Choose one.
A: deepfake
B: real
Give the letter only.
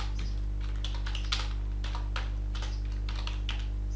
B